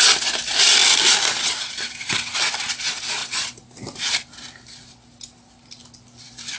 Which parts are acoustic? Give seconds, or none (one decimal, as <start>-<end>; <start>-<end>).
0.0-6.6